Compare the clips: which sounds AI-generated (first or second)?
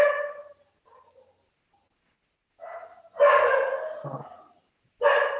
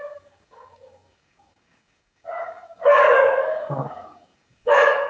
second